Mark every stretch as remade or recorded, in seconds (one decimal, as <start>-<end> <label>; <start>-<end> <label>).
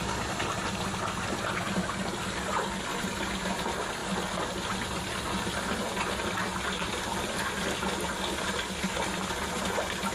0.0-10.1 recorded